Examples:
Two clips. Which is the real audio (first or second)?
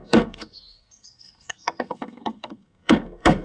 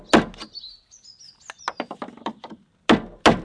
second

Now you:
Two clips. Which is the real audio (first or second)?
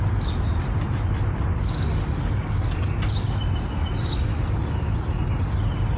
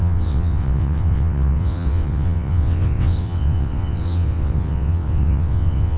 first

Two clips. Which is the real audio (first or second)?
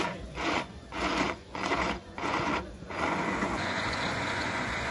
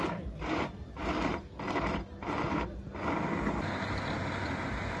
second